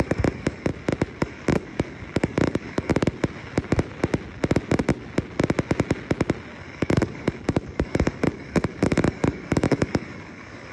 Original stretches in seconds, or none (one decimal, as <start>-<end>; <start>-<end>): 0.7-1.2; 2.9-6.6